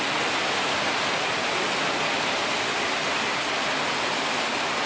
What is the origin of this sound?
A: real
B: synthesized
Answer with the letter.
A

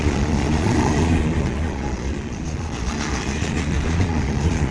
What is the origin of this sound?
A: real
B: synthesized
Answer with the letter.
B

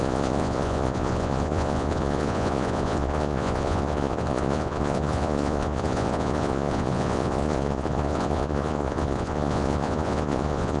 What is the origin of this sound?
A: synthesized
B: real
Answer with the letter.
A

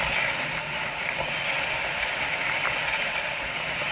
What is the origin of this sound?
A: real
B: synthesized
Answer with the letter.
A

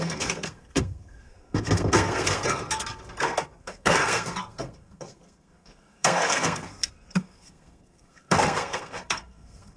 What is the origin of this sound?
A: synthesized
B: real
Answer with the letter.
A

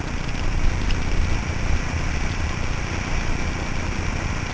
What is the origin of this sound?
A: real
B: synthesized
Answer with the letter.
A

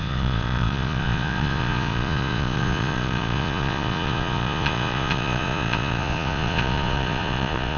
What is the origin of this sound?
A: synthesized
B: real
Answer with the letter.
A